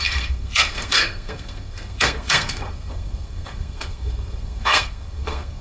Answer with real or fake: fake